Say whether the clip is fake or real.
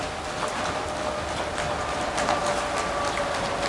real